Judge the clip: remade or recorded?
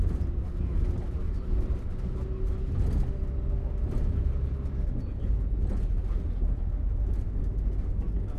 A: recorded